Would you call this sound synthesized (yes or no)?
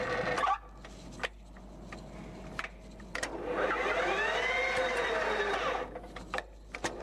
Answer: no